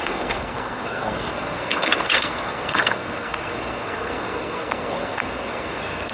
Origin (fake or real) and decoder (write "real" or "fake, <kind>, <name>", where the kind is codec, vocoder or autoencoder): fake, codec, SNAC